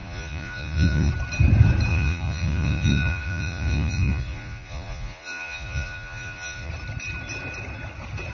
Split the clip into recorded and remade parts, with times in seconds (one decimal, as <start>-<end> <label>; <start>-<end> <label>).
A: 0.0-1.1 remade; 1.1-1.9 recorded; 1.9-6.7 remade; 6.7-8.3 recorded